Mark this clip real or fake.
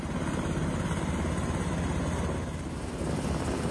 real